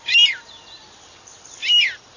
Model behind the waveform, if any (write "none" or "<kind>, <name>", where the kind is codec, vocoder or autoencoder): none